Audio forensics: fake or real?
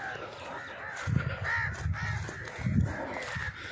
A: real